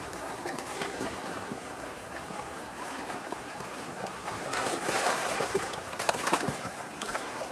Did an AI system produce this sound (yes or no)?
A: yes